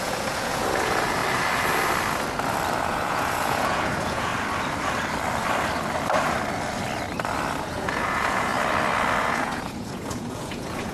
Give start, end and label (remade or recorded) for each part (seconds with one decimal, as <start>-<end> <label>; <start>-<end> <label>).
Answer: 0.0-1.2 remade; 1.2-2.8 recorded; 2.8-4.3 remade; 4.3-7.6 recorded; 7.6-8.5 remade; 8.5-9.2 recorded; 9.2-10.9 remade